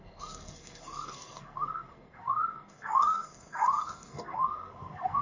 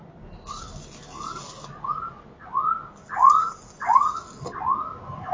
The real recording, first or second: second